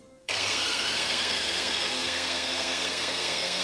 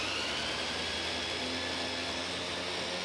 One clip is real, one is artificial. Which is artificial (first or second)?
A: first